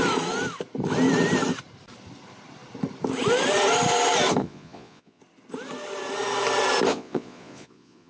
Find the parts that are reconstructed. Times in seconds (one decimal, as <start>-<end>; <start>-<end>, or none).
4.4-5.2; 6.9-8.1